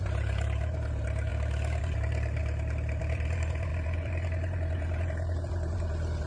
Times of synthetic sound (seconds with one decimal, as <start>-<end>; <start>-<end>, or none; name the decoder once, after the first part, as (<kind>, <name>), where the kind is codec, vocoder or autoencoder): 0.0-1.3 (vocoder, BigVGAN v2); 1.8-2.4; 3.0-6.3